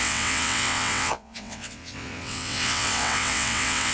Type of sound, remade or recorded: remade